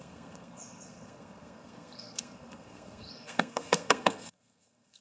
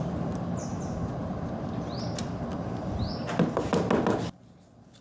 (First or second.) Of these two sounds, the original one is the second